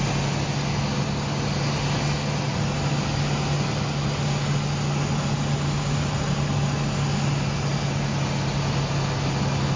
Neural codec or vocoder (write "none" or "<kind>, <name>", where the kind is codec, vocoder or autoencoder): none